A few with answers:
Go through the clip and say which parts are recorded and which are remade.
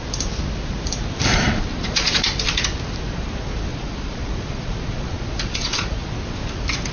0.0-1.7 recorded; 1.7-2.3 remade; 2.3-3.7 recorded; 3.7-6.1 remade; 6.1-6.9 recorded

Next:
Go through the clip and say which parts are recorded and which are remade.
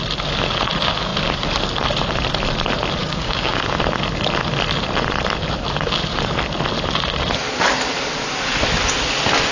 0.0-3.0 recorded; 3.0-3.7 remade; 3.7-9.5 recorded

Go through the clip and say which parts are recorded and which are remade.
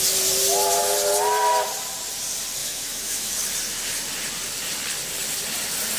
0.0-2.6 recorded; 2.6-3.3 remade; 3.3-6.0 recorded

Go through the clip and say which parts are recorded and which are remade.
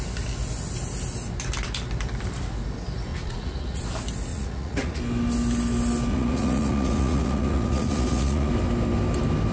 0.0-3.1 recorded; 3.1-3.8 remade; 3.8-4.3 recorded; 4.3-5.0 remade; 5.0-6.1 recorded; 6.1-8.5 remade; 8.5-9.5 recorded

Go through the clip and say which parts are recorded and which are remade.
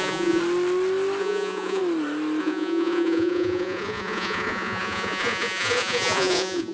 0.0-0.4 remade; 0.4-1.2 recorded; 1.2-1.8 remade; 1.8-2.4 recorded; 2.4-6.7 remade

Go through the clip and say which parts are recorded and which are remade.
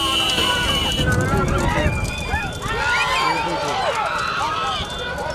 0.0-5.3 recorded